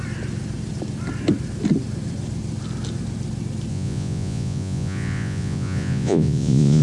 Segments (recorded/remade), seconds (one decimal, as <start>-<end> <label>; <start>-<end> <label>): 0.0-3.7 recorded; 3.7-6.8 remade